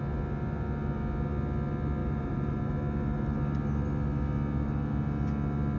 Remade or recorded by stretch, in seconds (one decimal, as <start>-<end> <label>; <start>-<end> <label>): 0.0-2.0 recorded; 2.0-2.7 remade; 2.7-5.8 recorded